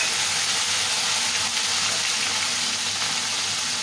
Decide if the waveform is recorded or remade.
recorded